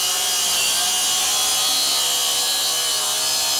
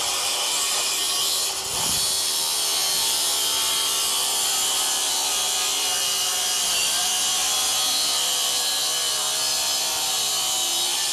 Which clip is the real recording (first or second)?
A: first